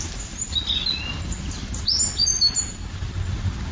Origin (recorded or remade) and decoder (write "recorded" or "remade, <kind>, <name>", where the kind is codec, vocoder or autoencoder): recorded